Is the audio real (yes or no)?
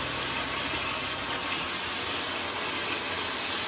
yes